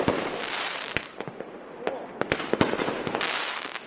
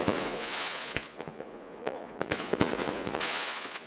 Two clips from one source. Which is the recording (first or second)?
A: first